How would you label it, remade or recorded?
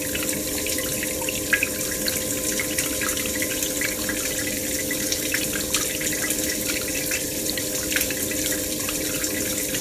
recorded